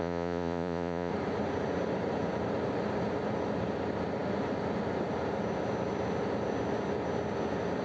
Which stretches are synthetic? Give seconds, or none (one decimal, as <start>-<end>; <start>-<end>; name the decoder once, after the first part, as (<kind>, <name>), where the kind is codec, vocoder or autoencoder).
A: 0.0-1.1 (vocoder, Vocos)